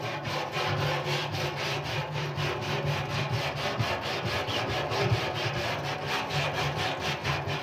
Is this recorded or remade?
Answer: recorded